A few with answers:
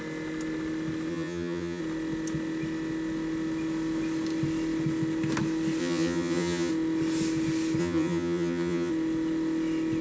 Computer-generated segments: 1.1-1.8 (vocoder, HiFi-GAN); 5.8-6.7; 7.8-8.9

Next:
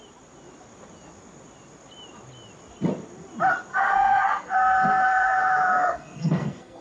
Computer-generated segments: 3.7-6.8 (codec, SNAC)

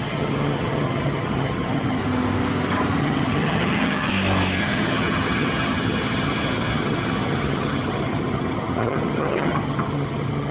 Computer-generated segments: 0.0-2.0 (vocoder, HiFi-GAN); 3.0-4.1; 4.6-10.5

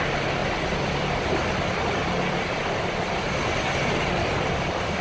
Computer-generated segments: none

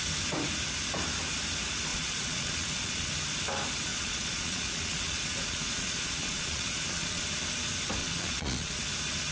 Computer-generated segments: 1.9-3.1 (vocoder, Vocos); 3.9-7.2; 8.0-8.8

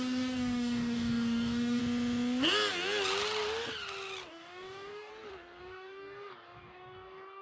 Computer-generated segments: 0.0-1.8 (codec, DAC); 4.3-5.1; 5.6-7.4

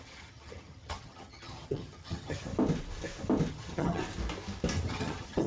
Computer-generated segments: 0.0-2.5 (vocoder, HiFi-GAN); 3.5-4.0; 4.9-5.5